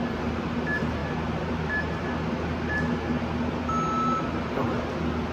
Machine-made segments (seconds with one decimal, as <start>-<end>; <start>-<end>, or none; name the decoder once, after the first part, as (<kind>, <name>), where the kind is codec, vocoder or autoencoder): none